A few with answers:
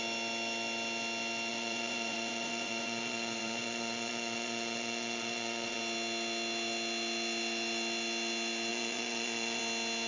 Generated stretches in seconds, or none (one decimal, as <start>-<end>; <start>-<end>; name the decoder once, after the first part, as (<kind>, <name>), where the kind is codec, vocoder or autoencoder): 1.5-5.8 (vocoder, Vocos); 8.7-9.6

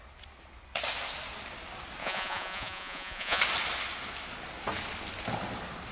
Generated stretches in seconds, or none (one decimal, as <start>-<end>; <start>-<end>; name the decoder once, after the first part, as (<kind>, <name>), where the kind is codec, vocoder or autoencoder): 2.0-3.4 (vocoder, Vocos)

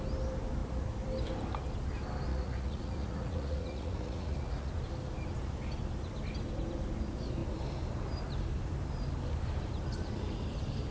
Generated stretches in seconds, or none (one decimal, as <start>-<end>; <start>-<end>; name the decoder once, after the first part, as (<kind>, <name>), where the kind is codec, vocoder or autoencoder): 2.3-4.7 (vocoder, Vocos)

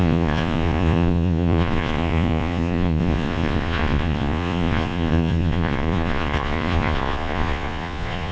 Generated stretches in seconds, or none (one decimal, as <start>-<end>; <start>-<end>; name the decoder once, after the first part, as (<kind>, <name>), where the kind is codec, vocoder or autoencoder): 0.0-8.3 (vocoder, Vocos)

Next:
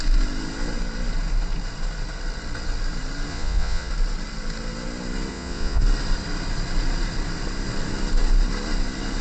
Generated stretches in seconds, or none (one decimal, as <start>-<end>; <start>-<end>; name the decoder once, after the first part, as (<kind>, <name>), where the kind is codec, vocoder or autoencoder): 3.3-3.9 (vocoder, Vocos); 5.3-5.8

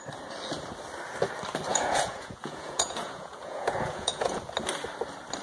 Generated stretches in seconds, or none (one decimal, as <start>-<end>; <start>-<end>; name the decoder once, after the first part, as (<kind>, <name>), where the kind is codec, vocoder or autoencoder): 1.7-4.4 (vocoder, Vocos)